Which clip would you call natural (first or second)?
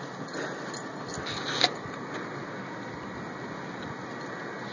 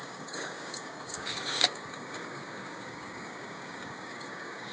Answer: first